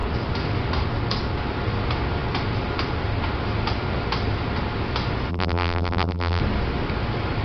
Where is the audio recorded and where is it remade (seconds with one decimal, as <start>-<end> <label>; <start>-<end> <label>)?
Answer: 0.0-5.3 recorded; 5.3-6.4 remade; 6.4-7.4 recorded